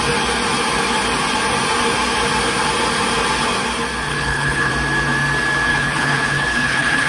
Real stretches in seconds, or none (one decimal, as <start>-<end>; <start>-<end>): 0.0-4.1; 4.7-5.7